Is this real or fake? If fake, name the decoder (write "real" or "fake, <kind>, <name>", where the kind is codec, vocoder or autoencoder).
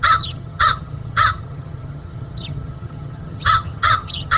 fake, vocoder, HiFi-GAN